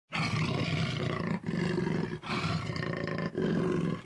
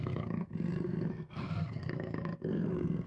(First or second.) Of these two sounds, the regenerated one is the second